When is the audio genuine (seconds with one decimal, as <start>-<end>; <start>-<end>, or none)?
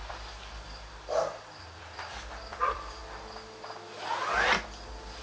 0.0-1.4; 3.0-5.2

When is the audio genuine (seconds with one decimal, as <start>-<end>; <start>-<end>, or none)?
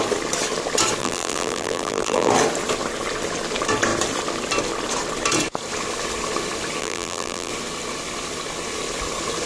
0.0-1.0; 2.3-6.8; 7.5-9.5